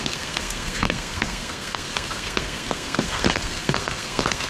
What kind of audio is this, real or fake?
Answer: fake